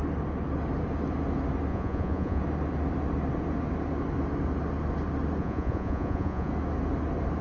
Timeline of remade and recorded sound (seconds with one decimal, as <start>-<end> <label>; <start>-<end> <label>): 0.0-1.7 recorded; 1.7-2.4 remade; 2.4-5.4 recorded; 5.4-6.5 remade; 6.5-7.4 recorded